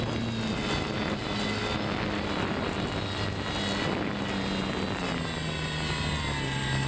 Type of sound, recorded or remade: recorded